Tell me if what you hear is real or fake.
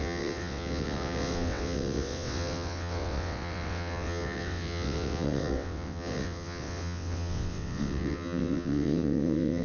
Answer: fake